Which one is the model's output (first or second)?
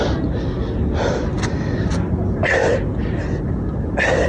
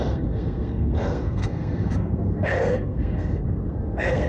second